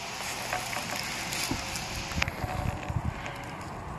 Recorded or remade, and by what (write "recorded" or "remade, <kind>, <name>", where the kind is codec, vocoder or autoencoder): recorded